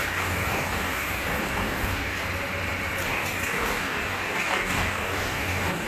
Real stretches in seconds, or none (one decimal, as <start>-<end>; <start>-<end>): 2.2-3.0